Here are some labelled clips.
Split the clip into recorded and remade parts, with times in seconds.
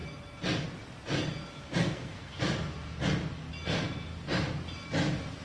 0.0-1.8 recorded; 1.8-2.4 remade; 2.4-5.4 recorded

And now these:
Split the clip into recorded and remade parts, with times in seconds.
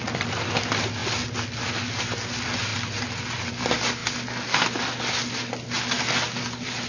0.0-6.9 recorded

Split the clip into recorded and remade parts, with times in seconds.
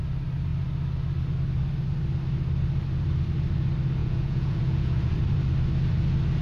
0.0-4.0 recorded; 4.0-5.1 remade; 5.1-6.4 recorded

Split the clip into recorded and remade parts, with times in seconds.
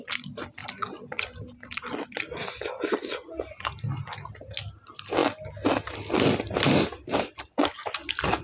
0.0-8.4 recorded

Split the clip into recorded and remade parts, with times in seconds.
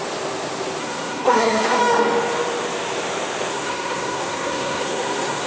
0.0-0.8 recorded; 0.8-1.8 remade; 1.8-3.5 recorded; 3.5-5.5 remade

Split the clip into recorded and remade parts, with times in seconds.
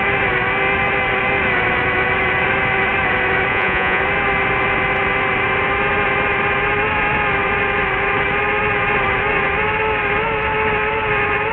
0.0-3.5 recorded; 3.5-4.0 remade; 4.0-11.5 recorded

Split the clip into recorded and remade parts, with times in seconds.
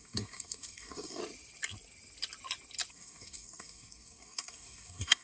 0.0-1.2 remade; 1.2-2.9 recorded; 2.9-5.2 remade